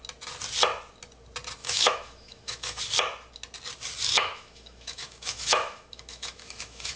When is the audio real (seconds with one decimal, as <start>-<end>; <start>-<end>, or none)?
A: 0.0-1.6; 2.8-4.1